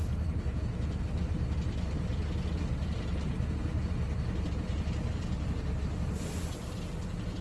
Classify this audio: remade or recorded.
recorded